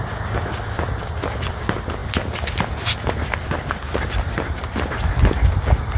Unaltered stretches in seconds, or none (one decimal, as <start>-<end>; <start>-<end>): 0.0-6.0